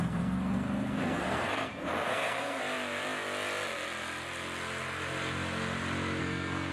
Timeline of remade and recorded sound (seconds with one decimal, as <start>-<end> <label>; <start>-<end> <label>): 0.0-2.6 remade; 2.6-6.2 recorded; 6.2-6.7 remade

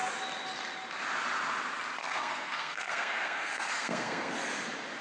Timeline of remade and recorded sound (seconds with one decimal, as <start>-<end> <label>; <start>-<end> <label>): 0.0-2.0 recorded; 2.0-4.3 remade; 4.3-5.0 recorded

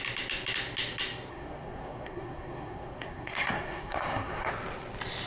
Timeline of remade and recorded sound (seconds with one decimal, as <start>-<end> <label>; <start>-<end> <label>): 0.0-1.3 recorded; 1.3-4.5 remade; 4.5-5.3 recorded

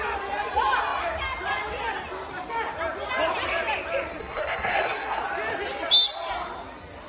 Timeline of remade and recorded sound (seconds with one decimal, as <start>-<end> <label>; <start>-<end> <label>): 0.0-4.2 recorded; 4.2-5.2 remade; 5.2-7.1 recorded

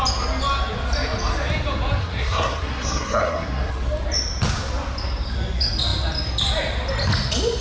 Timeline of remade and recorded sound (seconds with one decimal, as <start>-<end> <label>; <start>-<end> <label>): 0.0-2.0 recorded; 2.0-3.7 remade; 3.7-7.6 recorded

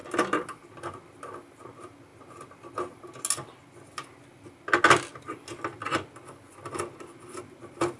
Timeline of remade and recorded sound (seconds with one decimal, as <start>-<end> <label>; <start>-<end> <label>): 0.0-8.0 recorded